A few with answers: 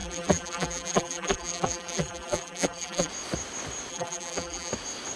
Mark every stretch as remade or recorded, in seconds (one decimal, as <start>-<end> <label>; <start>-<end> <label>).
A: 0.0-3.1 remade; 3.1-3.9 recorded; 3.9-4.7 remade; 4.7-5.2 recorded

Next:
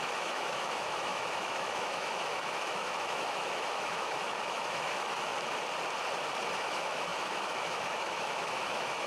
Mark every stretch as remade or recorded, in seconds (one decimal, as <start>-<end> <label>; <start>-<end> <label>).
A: 0.0-5.3 remade; 5.3-6.5 recorded; 6.5-9.1 remade

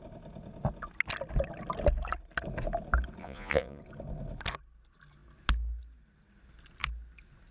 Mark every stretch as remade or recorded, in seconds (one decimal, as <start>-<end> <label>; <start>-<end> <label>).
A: 0.0-3.2 recorded; 3.2-3.8 remade; 3.8-7.5 recorded